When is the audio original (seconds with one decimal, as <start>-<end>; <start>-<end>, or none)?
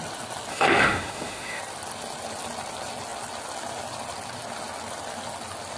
0.0-0.5; 1.6-5.8